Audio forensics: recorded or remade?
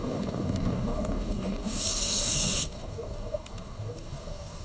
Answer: remade